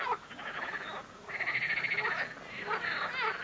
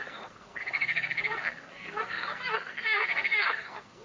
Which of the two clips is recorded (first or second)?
first